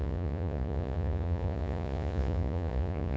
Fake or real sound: fake